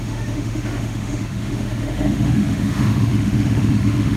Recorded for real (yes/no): no